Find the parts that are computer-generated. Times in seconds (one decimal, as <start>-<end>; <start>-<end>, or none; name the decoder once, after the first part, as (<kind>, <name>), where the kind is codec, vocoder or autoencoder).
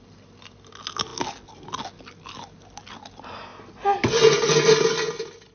none